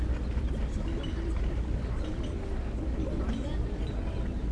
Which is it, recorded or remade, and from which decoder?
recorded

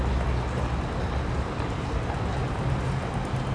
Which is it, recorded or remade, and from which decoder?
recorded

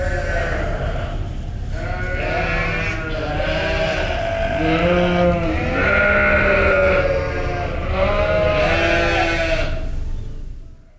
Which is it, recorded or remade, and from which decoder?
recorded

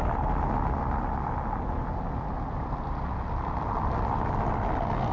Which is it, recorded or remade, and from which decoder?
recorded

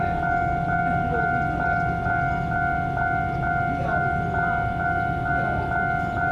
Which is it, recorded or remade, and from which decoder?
recorded